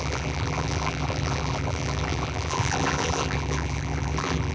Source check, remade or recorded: remade